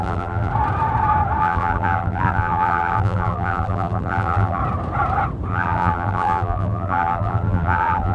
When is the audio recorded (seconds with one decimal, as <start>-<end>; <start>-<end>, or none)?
0.5-1.4; 4.6-5.5